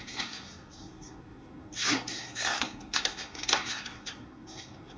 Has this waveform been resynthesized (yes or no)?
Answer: yes